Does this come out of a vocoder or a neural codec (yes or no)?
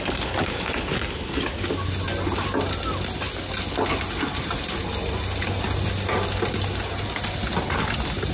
no